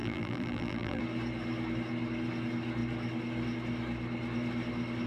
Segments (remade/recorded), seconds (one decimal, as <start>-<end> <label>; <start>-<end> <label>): 0.0-1.0 remade; 1.0-5.1 recorded